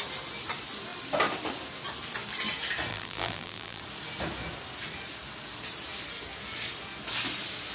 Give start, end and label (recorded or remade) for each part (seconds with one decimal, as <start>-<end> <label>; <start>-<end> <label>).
0.0-2.9 recorded; 2.9-3.8 remade; 3.8-7.7 recorded